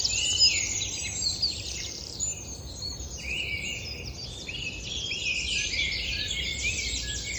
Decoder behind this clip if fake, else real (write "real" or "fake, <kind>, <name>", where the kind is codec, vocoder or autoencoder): real